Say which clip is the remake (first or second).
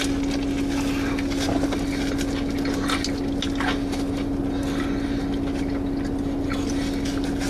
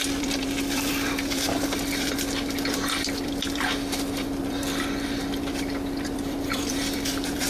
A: second